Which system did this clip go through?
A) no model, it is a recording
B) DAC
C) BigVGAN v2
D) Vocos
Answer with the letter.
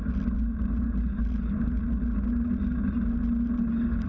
A